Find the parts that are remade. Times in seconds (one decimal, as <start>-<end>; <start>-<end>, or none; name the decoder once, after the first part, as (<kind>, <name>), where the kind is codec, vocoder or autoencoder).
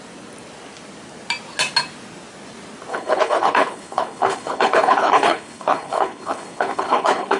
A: 2.9-7.4 (codec, HILCodec)